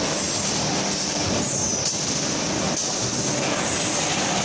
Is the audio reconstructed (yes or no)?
no